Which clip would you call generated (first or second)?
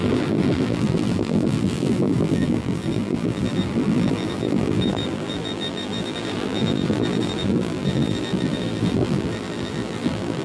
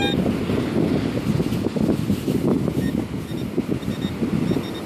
first